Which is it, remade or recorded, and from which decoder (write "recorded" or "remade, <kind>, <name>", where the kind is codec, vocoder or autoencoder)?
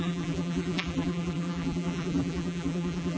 remade, vocoder, BigVGAN v2